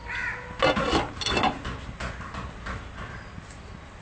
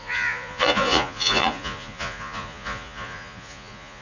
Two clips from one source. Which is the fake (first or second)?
second